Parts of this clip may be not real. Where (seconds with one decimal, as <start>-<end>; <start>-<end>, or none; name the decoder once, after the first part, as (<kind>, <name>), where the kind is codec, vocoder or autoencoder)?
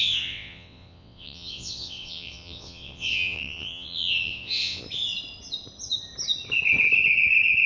0.0-4.8 (vocoder, WaveNeXt)